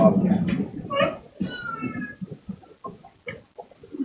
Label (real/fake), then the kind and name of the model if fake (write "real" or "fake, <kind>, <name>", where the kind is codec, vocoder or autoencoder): real